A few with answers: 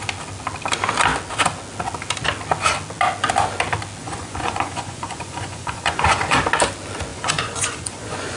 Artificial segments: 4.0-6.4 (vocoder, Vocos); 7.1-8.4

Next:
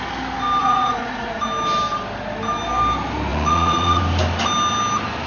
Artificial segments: 0.6-1.4 (vocoder, Vocos); 3.3-4.0

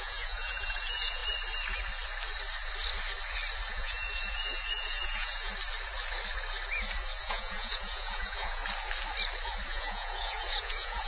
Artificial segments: 0.0-1.2 (vocoder, Vocos); 3.7-5.5; 7.2-8.6; 9.7-11.1

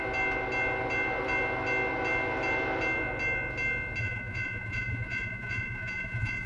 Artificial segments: 4.0-6.5 (vocoder, Vocos)

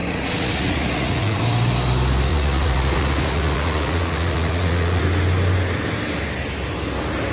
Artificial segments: 0.0-1.4 (vocoder, Vocos); 2.3-5.0